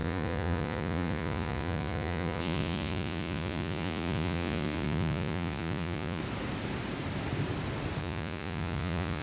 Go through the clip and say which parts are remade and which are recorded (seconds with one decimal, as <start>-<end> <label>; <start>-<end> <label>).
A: 0.0-6.2 remade; 6.2-8.0 recorded; 8.0-9.2 remade